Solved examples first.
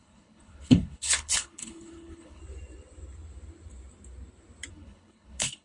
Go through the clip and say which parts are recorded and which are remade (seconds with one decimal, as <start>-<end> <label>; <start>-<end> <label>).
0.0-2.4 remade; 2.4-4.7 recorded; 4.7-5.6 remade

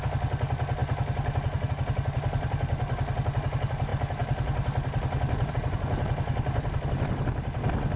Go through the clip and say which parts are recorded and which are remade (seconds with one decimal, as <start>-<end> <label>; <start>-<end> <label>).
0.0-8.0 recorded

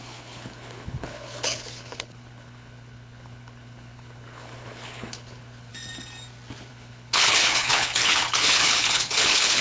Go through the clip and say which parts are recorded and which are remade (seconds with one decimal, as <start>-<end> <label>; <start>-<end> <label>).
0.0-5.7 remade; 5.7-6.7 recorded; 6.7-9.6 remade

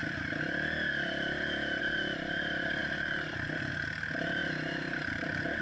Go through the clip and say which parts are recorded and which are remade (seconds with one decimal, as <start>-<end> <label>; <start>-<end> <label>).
0.0-5.6 recorded